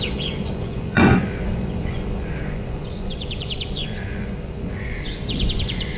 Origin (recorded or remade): remade